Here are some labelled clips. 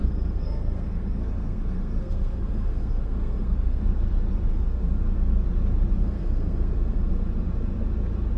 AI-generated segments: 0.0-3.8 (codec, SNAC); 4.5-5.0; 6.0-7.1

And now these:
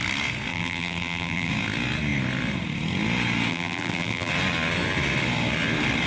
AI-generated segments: 0.5-1.5 (vocoder, BigVGAN v2); 3.5-4.3

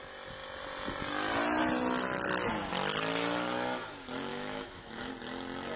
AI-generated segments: 4.3-5.1 (autoencoder, DAC-VAE)

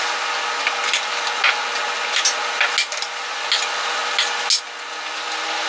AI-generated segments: none